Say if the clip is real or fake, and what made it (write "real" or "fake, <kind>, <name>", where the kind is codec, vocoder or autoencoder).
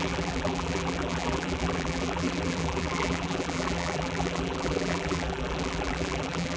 fake, vocoder, BigVGAN v2